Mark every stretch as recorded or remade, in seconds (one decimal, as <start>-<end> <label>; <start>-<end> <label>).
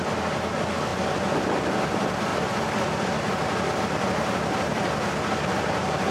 0.0-6.1 recorded